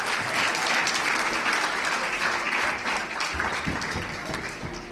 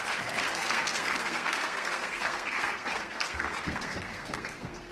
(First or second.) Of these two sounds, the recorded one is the first